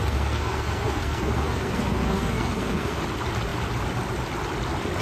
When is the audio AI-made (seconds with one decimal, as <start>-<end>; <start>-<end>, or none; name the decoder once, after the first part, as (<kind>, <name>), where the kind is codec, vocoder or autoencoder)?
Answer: 0.0-3.0 (codec, SNAC)